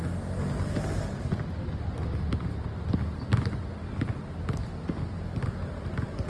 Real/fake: real